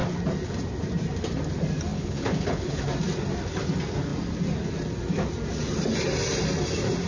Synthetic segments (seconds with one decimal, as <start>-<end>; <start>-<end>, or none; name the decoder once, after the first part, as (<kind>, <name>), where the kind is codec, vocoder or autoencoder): 1.9-2.8 (codec, HILCodec)